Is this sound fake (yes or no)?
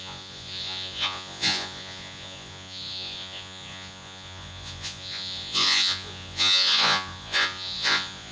yes